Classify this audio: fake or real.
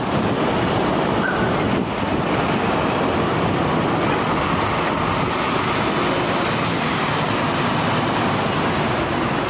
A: real